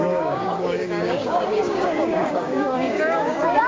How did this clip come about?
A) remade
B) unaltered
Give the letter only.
A